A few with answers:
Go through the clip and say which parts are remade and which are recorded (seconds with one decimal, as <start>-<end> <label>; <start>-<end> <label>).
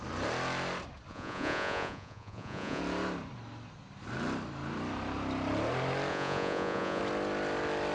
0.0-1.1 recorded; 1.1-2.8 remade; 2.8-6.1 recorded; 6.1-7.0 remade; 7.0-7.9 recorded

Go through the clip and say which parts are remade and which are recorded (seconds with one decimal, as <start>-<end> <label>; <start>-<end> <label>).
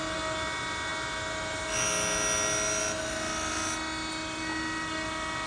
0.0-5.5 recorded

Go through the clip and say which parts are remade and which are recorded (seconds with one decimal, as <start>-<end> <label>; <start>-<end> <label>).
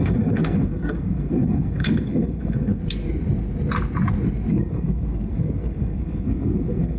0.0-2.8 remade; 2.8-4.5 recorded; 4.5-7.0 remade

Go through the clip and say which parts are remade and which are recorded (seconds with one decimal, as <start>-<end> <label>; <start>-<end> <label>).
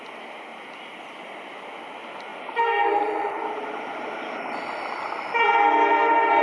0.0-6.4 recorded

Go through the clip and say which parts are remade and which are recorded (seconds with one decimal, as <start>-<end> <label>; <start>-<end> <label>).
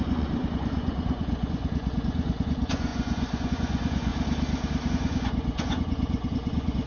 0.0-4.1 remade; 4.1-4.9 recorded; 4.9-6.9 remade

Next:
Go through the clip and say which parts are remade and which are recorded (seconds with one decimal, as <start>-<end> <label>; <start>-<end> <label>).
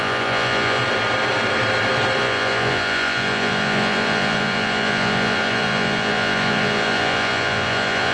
0.0-0.8 remade; 0.8-2.2 recorded; 2.2-8.1 remade